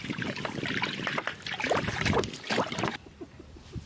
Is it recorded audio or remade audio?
recorded